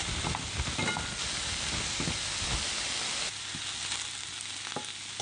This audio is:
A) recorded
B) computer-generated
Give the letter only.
A